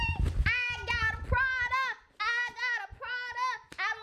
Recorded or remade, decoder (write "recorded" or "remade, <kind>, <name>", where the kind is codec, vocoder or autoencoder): recorded